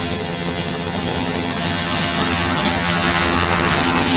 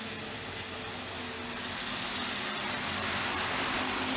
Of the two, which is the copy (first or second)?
first